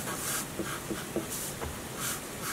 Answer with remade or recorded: remade